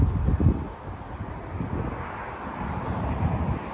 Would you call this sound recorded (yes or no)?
yes